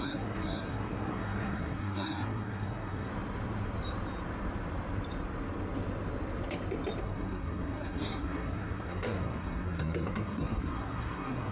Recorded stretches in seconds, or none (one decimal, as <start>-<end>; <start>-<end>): 3.1-7.0